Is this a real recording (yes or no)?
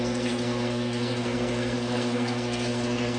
no